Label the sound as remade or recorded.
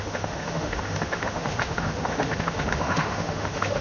remade